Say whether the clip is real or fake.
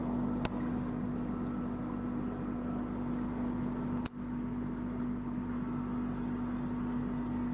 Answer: real